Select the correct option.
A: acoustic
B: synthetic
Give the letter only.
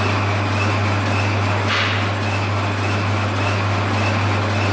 A